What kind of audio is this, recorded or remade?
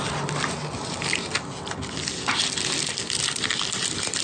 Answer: recorded